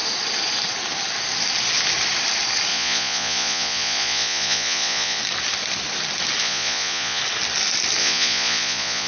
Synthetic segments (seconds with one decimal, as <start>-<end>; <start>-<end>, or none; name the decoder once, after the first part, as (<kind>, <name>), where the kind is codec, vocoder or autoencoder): 2.7-5.2 (vocoder, Vocos); 6.4-7.2; 8.0-9.1